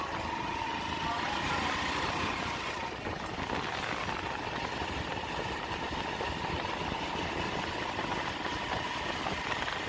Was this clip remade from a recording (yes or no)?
no